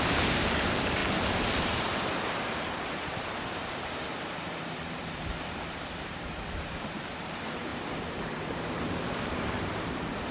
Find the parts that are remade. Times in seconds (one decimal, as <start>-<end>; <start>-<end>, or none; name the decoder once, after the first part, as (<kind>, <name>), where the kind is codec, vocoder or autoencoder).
0.0-1.0 (vocoder, BigVGAN v2); 1.6-10.3